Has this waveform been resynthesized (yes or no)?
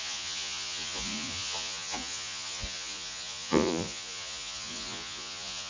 yes